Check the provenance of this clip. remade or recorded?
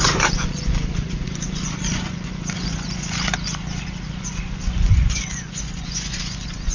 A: remade